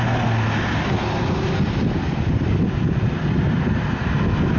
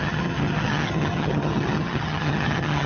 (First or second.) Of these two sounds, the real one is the first